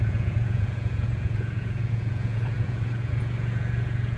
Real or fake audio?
fake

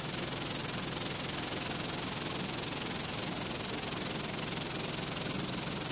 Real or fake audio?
real